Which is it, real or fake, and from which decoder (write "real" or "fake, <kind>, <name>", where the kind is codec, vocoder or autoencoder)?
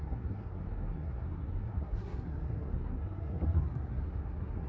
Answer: fake, codec, SNAC